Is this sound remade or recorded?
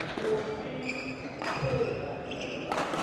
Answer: recorded